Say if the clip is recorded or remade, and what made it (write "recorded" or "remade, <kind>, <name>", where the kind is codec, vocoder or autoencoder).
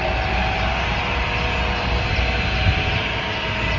recorded